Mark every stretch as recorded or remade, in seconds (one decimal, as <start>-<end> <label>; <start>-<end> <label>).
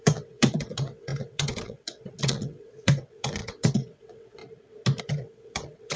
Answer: 0.0-4.4 remade; 4.4-5.0 recorded; 5.0-6.0 remade